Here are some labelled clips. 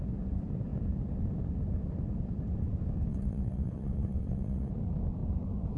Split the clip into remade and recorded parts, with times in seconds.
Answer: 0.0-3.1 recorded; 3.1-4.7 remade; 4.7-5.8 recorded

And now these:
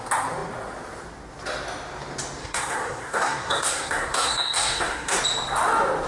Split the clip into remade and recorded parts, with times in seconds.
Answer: 0.0-2.4 recorded; 2.4-5.2 remade; 5.2-6.1 recorded

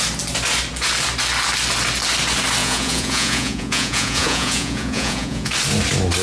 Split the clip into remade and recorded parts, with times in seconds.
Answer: 0.0-2.6 recorded; 2.6-5.5 remade; 5.5-6.2 recorded

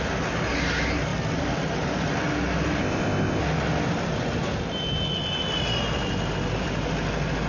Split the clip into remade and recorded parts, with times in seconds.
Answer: 0.0-2.8 recorded; 2.8-3.4 remade; 3.4-7.5 recorded